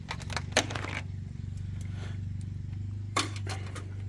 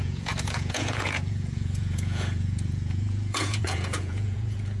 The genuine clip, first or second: first